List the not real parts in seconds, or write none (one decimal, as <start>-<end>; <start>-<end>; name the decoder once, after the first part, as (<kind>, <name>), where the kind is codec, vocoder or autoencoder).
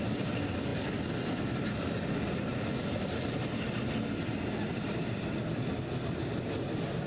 none